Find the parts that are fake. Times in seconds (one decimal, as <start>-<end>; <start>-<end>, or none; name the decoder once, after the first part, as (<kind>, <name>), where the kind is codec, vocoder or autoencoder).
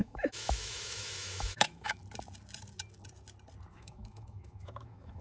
0.0-2.0 (autoencoder, DAC-VAE); 3.7-5.2